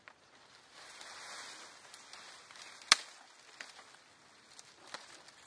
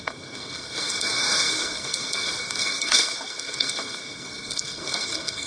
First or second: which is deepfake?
second